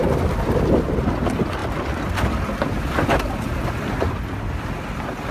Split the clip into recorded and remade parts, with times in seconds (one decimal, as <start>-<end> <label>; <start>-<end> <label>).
0.0-5.3 recorded